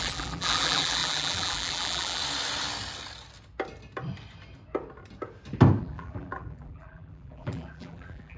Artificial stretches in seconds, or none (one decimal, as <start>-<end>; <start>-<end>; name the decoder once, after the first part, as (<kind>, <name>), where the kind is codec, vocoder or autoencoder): 0.0-2.2 (vocoder, BigVGAN v2); 5.8-8.4